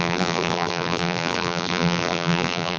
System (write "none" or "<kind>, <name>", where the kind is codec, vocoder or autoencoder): vocoder, BigVGAN v2